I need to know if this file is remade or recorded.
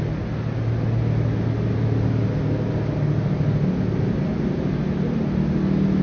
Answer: recorded